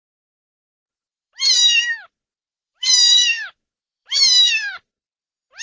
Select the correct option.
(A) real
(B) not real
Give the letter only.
B